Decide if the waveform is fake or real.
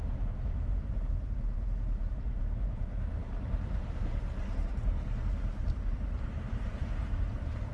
fake